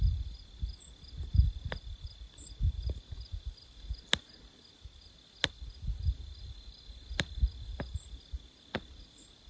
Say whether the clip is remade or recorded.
recorded